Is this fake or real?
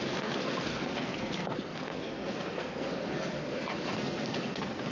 fake